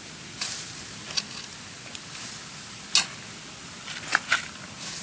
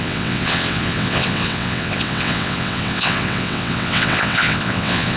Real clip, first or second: first